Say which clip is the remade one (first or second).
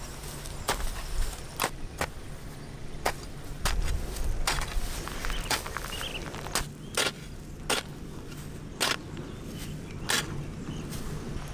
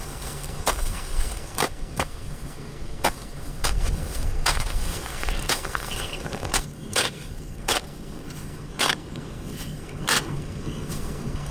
second